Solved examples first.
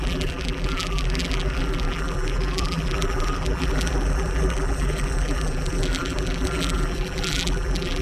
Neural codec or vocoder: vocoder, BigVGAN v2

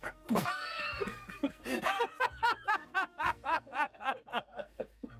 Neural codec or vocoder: codec, SNAC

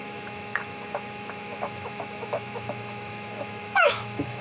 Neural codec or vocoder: autoencoder, DAC-VAE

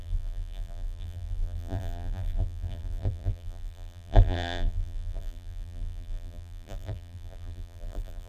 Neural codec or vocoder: vocoder, BigVGAN v2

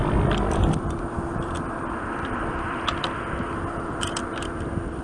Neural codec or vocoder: vocoder, BigVGAN v2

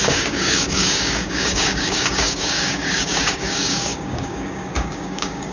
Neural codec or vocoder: codec, DAC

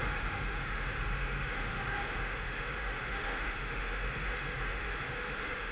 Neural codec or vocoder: autoencoder, DAC-VAE